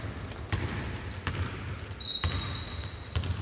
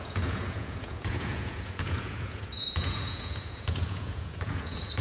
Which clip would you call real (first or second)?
first